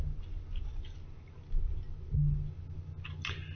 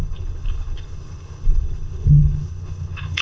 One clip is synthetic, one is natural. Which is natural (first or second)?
first